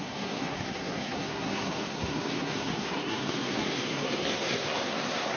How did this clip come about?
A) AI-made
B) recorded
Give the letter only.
A